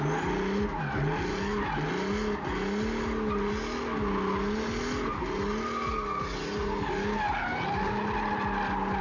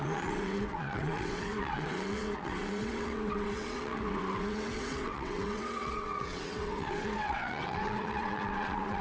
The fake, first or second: second